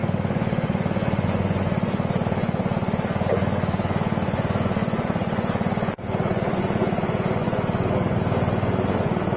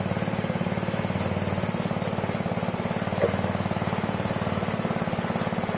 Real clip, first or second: second